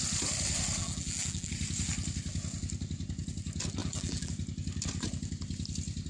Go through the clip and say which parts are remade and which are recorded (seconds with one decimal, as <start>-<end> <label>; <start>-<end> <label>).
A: 0.0-0.8 recorded; 0.8-1.5 remade; 1.5-3.8 recorded; 3.8-4.3 remade; 4.3-6.1 recorded

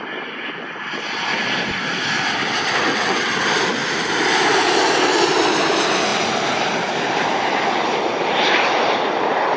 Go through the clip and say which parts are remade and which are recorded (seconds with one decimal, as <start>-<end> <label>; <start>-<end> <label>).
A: 0.0-2.9 recorded; 2.9-3.4 remade; 3.4-9.6 recorded

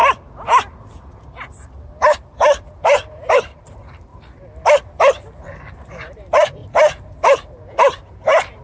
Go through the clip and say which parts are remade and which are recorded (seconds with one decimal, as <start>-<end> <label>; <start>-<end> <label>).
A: 0.0-2.2 recorded; 2.2-4.1 remade; 4.1-5.4 recorded; 5.4-6.6 remade; 6.6-8.1 recorded; 8.1-8.6 remade

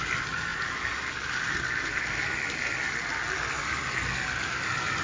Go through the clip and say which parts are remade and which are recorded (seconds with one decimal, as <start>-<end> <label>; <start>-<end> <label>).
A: 0.0-5.0 recorded

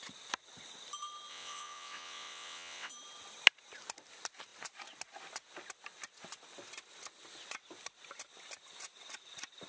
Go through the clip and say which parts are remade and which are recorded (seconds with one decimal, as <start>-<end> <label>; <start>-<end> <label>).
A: 0.0-1.3 recorded; 1.3-2.9 remade; 2.9-9.7 recorded